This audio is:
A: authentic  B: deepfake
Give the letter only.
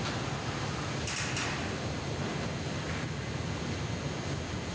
A